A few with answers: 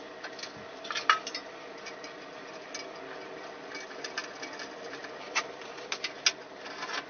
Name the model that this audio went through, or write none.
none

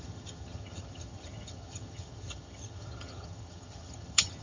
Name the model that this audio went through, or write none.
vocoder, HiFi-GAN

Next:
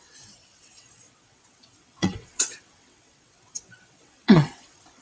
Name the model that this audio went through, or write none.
vocoder, WaveNeXt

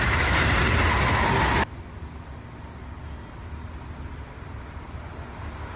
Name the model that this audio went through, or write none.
none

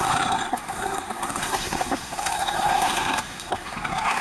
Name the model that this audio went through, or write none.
codec, SNAC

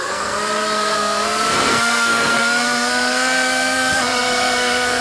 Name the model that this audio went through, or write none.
codec, SNAC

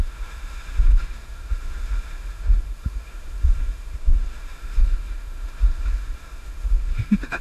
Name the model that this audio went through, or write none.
autoencoder, DAC-VAE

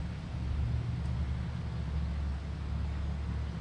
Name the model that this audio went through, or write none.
none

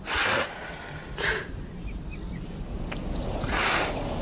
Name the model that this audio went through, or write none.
none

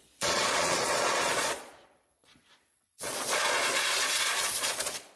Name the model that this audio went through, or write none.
vocoder, Vocos